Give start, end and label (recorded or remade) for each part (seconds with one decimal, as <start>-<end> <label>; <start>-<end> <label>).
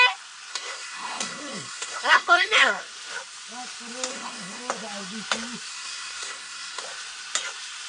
0.0-0.5 recorded; 0.5-2.8 remade; 2.8-4.1 recorded; 4.1-4.6 remade; 4.6-5.7 recorded; 5.7-6.8 remade; 6.8-7.9 recorded